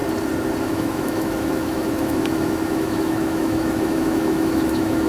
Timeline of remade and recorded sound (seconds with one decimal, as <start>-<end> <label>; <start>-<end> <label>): 0.0-0.6 recorded; 0.6-5.1 remade